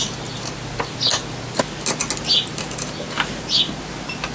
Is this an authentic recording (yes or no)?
yes